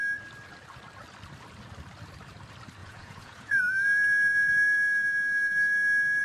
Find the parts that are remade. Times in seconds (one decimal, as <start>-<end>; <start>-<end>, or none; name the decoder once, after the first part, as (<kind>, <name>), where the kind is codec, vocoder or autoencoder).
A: 2.8-3.6 (vocoder, Vocos)